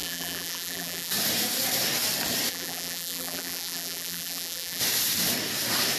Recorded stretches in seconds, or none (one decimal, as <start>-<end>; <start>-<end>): 1.1-2.5; 4.8-6.0